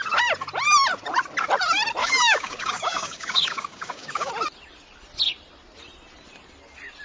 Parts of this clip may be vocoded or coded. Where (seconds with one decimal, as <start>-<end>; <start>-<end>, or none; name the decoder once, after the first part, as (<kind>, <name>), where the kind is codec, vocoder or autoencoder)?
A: 2.0-4.3 (codec, DAC)